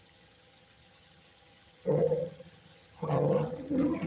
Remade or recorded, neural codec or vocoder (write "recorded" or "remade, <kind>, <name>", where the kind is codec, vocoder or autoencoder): remade, vocoder, HiFi-GAN